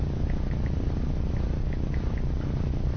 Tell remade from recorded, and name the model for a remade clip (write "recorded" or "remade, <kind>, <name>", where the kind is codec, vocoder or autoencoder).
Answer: recorded